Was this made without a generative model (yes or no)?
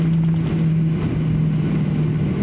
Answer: yes